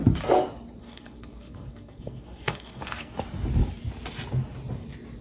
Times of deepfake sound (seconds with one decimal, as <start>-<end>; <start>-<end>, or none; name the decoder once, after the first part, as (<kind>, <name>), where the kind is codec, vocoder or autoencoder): 0.8-3.1 (codec, SNAC)